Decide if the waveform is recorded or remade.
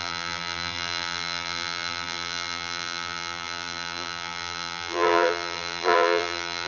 remade